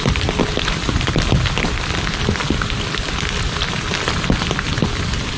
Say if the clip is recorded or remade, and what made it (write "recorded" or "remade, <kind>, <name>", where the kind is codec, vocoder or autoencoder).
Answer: recorded